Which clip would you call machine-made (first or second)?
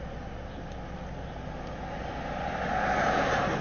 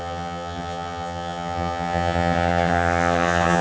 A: second